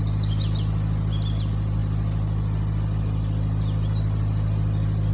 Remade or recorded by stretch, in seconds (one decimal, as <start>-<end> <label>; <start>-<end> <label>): 0.0-5.1 recorded